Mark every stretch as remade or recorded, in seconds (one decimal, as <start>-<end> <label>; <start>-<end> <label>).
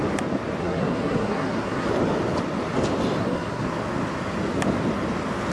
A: 0.0-0.6 recorded; 0.6-1.9 remade; 1.9-3.2 recorded; 3.2-3.7 remade; 3.7-5.5 recorded